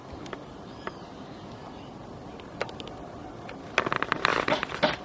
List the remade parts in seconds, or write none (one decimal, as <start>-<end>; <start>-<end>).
2.0-3.3; 4.3-5.0